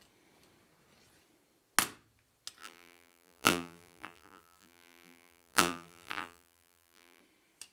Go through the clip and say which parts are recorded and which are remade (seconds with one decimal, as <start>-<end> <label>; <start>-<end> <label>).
0.0-2.6 recorded; 2.6-7.2 remade; 7.2-7.7 recorded